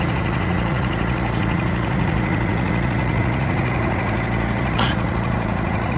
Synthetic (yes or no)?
yes